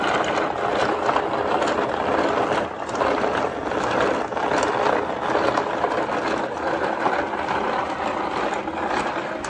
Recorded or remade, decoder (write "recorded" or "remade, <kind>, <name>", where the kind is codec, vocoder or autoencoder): recorded